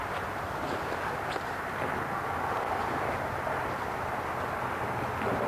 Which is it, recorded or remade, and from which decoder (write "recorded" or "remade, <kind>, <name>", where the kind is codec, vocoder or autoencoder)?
recorded